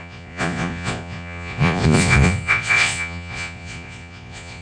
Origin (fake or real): fake